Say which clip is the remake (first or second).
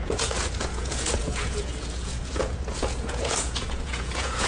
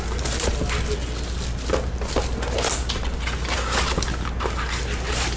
first